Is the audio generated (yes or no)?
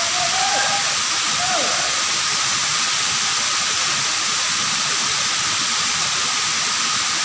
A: no